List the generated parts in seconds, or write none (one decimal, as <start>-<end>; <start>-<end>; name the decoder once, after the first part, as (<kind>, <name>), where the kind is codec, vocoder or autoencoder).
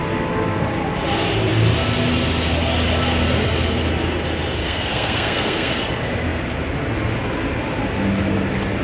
4.6-5.8 (codec, SNAC)